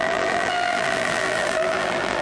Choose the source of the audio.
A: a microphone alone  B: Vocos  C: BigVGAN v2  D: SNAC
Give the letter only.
C